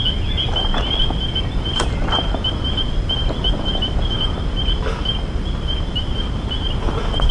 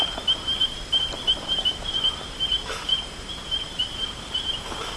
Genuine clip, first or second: first